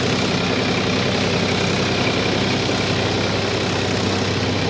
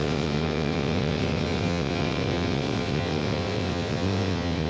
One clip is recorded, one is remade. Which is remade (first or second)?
second